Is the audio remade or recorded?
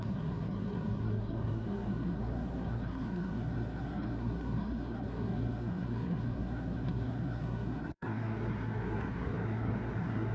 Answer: remade